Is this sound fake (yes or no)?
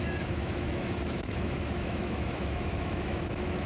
yes